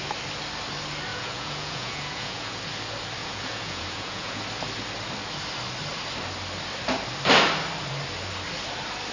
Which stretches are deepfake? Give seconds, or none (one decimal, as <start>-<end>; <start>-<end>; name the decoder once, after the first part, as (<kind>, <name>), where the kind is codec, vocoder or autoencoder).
1.1-2.6 (vocoder, Vocos); 3.2-4.4